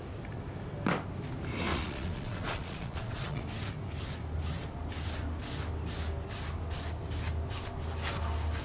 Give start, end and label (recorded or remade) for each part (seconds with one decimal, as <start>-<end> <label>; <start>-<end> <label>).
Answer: 0.0-1.7 recorded; 1.7-3.4 remade; 3.4-8.6 recorded